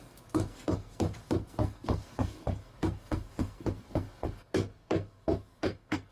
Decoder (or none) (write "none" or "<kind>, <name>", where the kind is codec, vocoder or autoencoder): codec, SNAC